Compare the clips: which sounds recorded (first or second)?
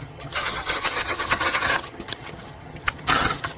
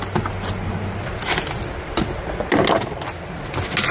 second